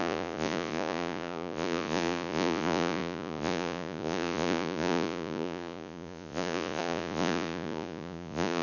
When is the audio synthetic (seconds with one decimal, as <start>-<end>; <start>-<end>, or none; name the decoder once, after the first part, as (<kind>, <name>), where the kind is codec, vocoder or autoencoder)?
0.0-8.6 (vocoder, Vocos)